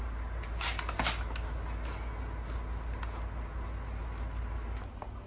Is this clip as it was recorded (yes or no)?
yes